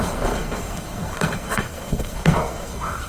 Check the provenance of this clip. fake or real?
fake